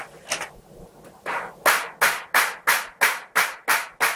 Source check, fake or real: real